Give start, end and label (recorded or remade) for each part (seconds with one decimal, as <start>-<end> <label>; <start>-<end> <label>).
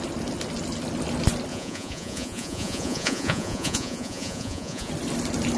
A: 0.0-1.5 recorded; 1.5-4.9 remade; 4.9-5.6 recorded